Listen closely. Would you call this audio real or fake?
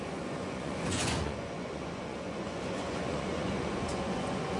fake